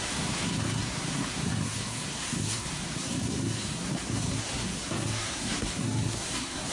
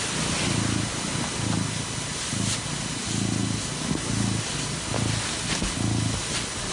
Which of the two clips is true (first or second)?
second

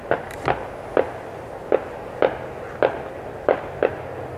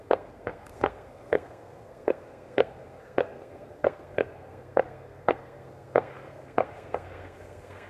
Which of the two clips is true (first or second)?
first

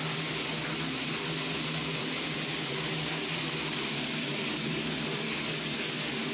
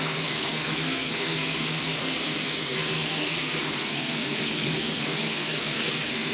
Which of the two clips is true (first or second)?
first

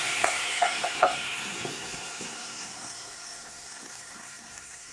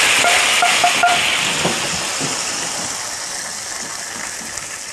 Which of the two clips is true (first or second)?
second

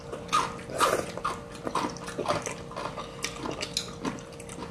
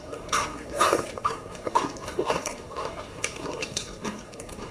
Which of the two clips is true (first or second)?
first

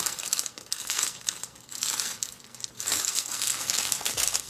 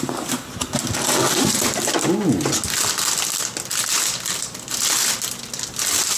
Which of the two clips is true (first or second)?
second